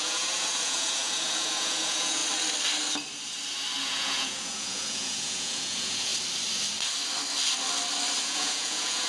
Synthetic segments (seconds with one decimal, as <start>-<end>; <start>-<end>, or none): 0.0-2.2; 3.8-6.1; 8.2-9.1